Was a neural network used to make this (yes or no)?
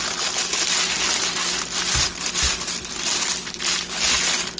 no